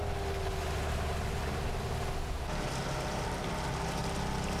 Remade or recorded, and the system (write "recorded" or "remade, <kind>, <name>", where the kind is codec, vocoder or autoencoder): recorded